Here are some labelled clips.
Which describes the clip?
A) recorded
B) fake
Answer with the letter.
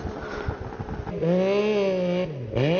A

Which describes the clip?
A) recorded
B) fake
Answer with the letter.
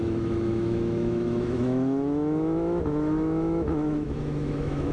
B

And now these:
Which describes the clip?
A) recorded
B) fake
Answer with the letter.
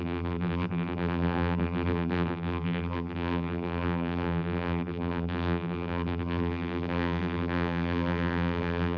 B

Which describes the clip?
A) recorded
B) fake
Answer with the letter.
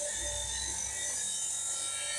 A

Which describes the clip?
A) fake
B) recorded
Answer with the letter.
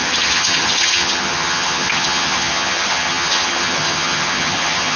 A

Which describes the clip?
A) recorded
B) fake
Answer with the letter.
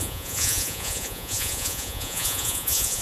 B